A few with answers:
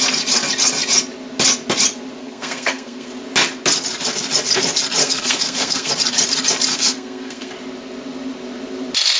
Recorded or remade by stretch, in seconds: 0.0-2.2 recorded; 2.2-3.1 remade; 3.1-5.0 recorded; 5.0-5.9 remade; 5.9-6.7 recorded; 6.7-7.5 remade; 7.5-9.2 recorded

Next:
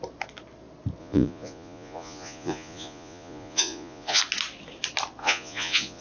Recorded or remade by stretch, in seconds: 0.0-1.0 recorded; 1.0-4.2 remade; 4.2-5.2 recorded; 5.2-6.0 remade

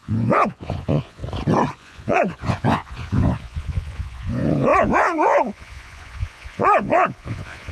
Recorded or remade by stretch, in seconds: 0.0-1.2 remade; 1.2-1.7 recorded; 1.7-7.7 remade

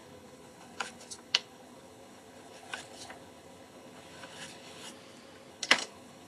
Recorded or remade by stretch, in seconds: 0.0-4.9 remade; 4.9-5.5 recorded; 5.5-6.3 remade

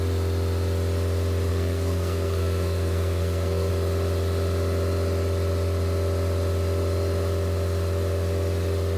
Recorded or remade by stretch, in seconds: 0.0-1.5 recorded; 1.5-3.7 remade; 3.7-9.0 recorded